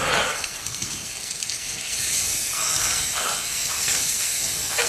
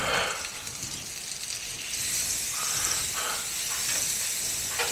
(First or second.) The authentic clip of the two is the second